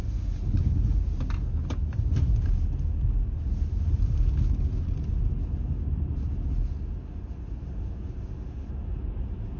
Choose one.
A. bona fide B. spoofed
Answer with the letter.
A